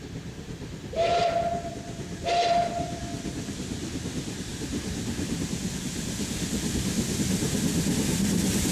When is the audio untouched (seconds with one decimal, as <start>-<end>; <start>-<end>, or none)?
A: 0.0-8.7